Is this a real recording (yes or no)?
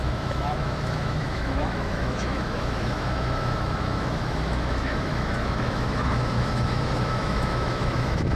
no